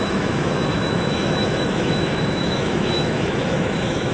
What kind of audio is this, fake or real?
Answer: fake